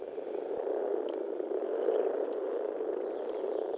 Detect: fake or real real